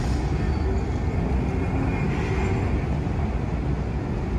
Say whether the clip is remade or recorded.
recorded